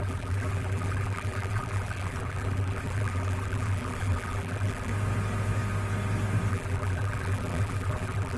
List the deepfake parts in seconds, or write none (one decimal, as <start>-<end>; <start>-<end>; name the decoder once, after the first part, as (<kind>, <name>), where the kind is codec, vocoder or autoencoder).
0.0-4.9 (vocoder, BigVGAN v2); 6.5-8.4